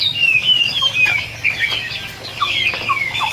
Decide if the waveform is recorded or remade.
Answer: remade